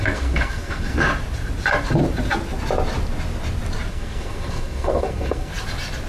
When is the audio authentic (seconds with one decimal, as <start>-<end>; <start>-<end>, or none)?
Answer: 1.1-3.9; 5.5-6.1